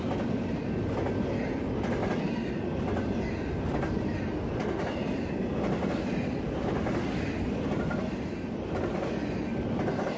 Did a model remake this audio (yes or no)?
no